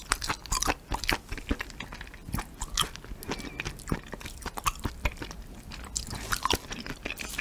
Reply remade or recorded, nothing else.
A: recorded